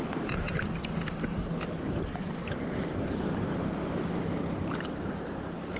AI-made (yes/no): no